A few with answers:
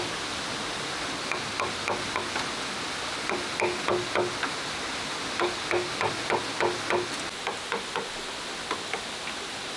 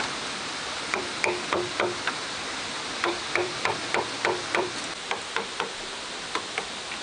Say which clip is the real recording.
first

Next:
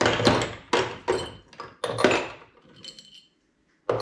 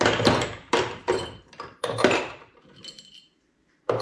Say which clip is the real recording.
first